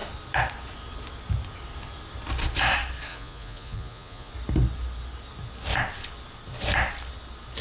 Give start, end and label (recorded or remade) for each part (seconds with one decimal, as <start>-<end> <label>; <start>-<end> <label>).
0.0-3.1 recorded; 3.1-4.3 remade; 4.3-7.6 recorded